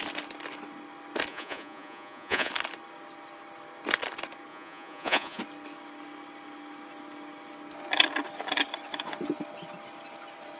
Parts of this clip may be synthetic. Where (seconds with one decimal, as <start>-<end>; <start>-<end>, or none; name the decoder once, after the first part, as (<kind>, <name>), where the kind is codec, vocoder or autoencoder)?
1.3-2.5 (vocoder, Vocos); 4.5-5.4

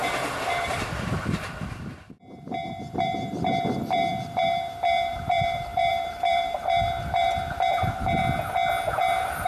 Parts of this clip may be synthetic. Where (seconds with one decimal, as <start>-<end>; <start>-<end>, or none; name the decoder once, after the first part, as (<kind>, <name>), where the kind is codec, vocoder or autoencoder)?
0.0-8.2 (vocoder, BigVGAN v2); 9.0-9.5

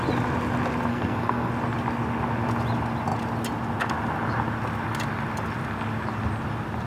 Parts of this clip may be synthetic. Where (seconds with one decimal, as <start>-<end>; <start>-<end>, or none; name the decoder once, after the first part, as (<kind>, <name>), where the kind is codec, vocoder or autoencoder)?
0.9-1.5 (codec, SNAC)

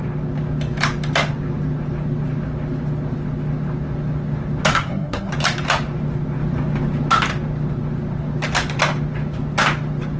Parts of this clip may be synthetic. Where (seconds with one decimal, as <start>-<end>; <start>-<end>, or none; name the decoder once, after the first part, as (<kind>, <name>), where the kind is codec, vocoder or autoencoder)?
4.7-5.3 (codec, SNAC)

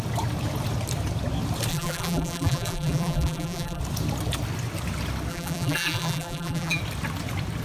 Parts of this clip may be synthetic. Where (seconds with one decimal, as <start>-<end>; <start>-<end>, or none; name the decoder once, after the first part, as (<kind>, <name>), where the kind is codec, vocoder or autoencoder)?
1.7-3.8 (vocoder, BigVGAN v2); 5.3-6.8

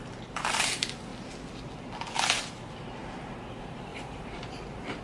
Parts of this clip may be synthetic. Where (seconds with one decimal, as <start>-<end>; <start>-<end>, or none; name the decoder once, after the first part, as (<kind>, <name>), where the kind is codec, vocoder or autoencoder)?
0.0-1.1 (vocoder, BigVGAN v2); 2.0-5.0

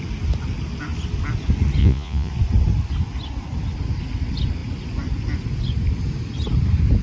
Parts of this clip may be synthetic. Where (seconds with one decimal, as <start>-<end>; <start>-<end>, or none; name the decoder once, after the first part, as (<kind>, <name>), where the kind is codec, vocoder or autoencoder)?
1.8-2.3 (vocoder, Vocos)